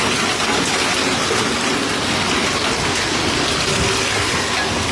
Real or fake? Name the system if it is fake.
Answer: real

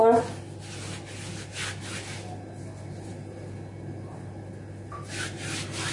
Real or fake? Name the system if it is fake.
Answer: real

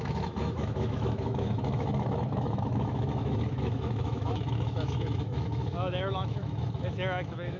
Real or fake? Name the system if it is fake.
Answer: fake, autoencoder, DAC-VAE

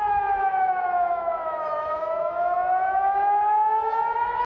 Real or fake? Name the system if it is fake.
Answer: fake, autoencoder, DAC-VAE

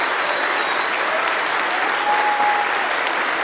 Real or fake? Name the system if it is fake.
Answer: real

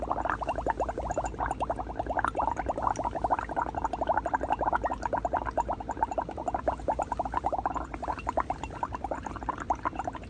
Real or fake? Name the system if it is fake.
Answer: real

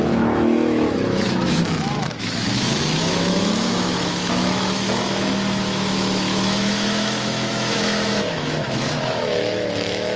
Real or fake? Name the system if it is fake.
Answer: fake, autoencoder, DAC-VAE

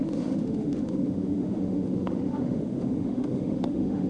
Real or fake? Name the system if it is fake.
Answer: fake, autoencoder, DAC-VAE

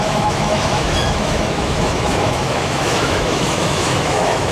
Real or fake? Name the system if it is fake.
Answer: fake, autoencoder, DAC-VAE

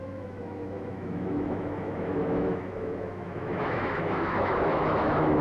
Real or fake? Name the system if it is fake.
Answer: fake, autoencoder, DAC-VAE